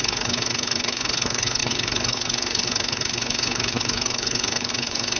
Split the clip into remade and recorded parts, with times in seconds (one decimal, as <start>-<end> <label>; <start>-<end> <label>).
0.0-5.2 remade